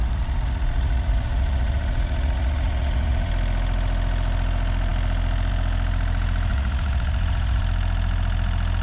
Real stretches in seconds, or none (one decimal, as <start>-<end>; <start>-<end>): 3.3-6.5; 7.6-8.8